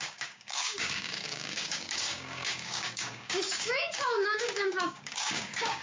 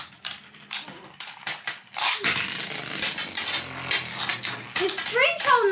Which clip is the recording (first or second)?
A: second